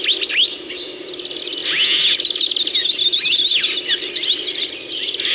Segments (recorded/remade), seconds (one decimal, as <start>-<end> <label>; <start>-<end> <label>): 0.0-5.3 recorded